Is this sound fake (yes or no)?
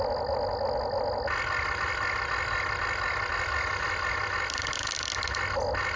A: no